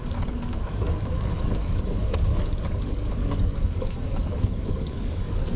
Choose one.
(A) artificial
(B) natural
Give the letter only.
A